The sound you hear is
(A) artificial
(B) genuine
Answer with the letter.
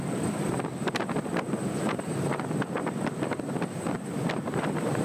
A